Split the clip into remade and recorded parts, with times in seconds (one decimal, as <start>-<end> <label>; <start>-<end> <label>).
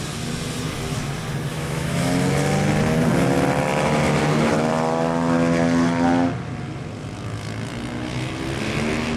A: 0.0-1.5 recorded; 1.5-2.1 remade; 2.1-9.2 recorded